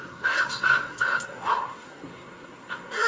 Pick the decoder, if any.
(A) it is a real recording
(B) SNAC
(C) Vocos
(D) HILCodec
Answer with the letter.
B